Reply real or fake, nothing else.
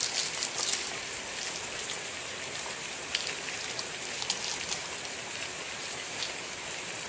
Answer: real